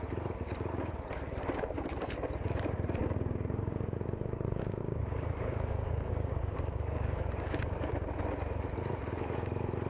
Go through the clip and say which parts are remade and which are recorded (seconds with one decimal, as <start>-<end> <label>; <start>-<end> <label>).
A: 0.0-3.0 recorded; 3.0-7.9 remade; 7.9-9.9 recorded

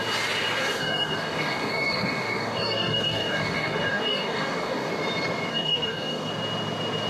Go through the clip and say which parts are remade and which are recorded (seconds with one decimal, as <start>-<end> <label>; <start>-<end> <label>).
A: 0.0-0.6 recorded; 0.6-4.9 remade; 4.9-5.5 recorded; 5.5-6.3 remade; 6.3-7.1 recorded

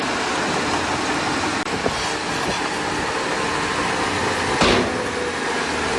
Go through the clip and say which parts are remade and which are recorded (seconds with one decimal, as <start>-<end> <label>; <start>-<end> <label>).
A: 0.0-6.0 recorded

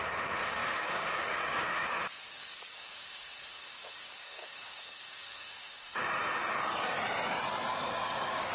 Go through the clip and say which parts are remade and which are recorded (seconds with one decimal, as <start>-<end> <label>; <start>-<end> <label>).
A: 0.0-6.0 remade; 6.0-7.7 recorded; 7.7-8.5 remade

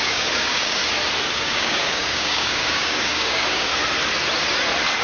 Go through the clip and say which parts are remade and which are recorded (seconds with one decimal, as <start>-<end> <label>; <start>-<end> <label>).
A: 0.0-0.8 remade; 0.8-1.3 recorded; 1.3-3.7 remade; 3.7-5.0 recorded